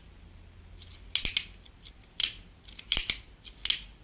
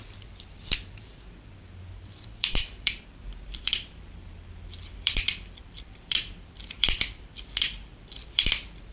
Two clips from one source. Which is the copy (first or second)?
second